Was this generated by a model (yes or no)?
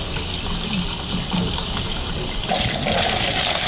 no